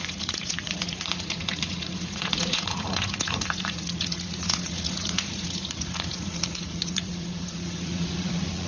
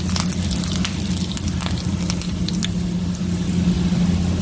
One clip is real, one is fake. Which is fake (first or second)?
first